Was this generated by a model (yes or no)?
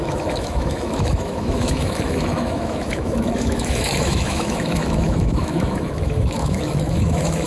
yes